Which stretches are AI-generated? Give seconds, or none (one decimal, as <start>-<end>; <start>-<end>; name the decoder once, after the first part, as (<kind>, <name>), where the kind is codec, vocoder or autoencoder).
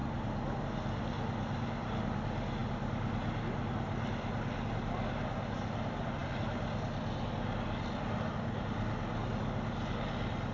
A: none